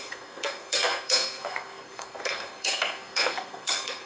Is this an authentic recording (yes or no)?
no